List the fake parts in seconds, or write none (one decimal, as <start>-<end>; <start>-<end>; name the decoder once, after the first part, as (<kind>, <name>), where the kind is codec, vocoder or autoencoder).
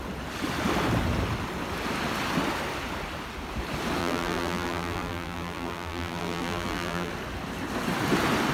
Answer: 4.0-7.1 (vocoder, BigVGAN v2)